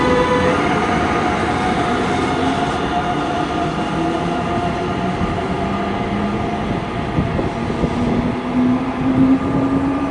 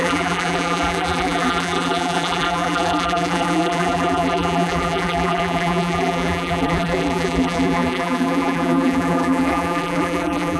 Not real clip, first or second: second